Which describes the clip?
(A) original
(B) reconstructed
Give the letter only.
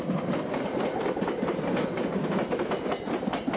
A